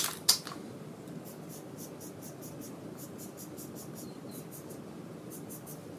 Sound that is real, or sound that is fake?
real